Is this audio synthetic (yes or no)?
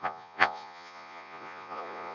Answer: yes